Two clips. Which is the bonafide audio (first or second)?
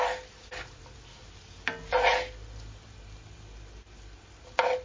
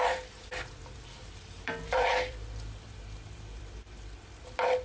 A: first